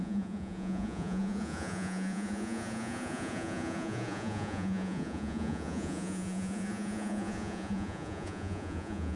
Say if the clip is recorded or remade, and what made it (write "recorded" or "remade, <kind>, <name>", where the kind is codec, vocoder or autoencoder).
remade, vocoder, Vocos